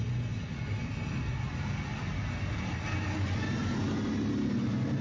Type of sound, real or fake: real